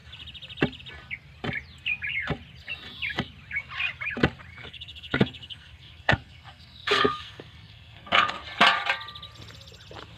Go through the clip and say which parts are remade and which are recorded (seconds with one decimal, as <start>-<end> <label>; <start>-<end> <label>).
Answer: 0.0-4.5 recorded; 4.5-8.4 remade; 8.4-10.2 recorded